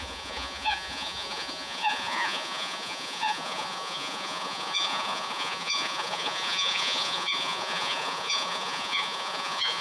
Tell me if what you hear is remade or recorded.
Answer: remade